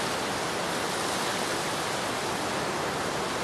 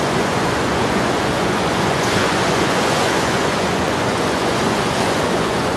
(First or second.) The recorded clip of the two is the first